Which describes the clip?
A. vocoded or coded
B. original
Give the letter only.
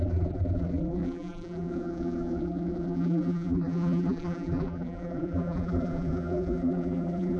A